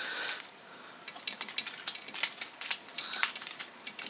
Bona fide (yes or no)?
yes